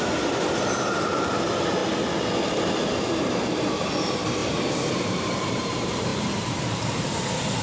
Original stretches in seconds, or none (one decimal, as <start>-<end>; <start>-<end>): 1.8-2.8